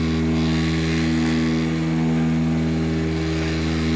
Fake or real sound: real